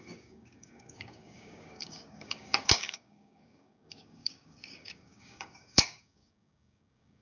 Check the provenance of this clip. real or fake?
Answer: fake